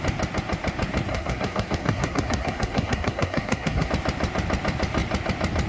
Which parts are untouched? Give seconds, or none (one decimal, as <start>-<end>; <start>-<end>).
0.0-1.1; 3.9-5.7